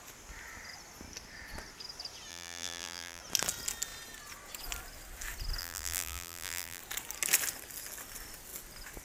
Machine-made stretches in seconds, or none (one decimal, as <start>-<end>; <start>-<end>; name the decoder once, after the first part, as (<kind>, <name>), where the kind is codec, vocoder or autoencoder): 2.3-3.2 (vocoder, BigVGAN v2); 5.6-6.8